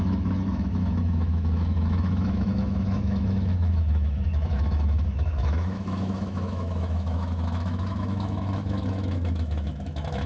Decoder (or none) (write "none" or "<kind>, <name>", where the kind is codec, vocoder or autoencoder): autoencoder, DAC-VAE